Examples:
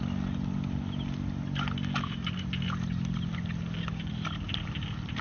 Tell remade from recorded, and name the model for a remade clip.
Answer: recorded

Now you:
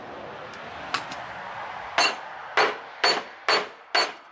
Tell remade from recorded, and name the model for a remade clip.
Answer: recorded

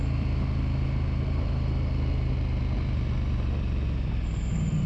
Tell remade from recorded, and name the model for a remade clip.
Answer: recorded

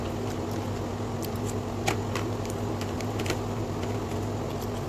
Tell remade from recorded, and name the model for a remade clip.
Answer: recorded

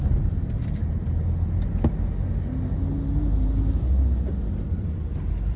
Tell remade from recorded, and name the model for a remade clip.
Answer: recorded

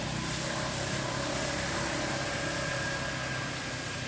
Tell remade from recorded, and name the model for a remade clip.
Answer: recorded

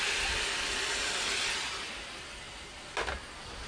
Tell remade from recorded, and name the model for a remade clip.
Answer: recorded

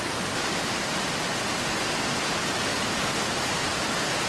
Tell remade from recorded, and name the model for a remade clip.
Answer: recorded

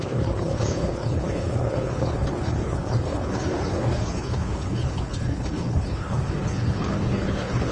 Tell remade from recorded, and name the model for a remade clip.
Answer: remade, codec, HILCodec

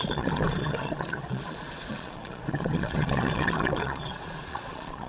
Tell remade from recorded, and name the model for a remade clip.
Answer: remade, vocoder, Vocos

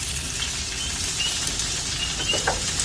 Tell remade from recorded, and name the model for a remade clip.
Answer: recorded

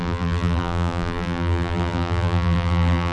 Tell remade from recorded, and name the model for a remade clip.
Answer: remade, vocoder, BigVGAN v2